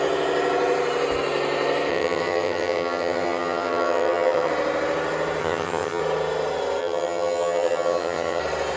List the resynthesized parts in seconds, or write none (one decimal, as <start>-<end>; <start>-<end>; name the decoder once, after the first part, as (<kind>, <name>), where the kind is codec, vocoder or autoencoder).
1.9-4.5 (vocoder, HiFi-GAN); 5.4-6.0; 6.8-8.4